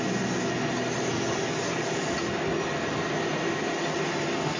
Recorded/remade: recorded